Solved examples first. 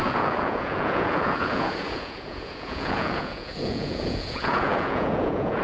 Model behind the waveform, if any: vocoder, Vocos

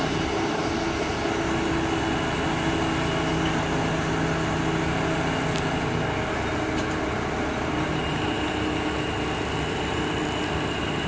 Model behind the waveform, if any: none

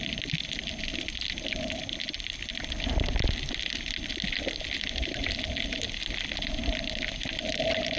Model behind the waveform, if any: none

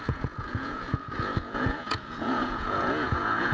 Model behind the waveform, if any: vocoder, Vocos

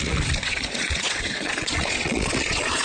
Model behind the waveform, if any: vocoder, Vocos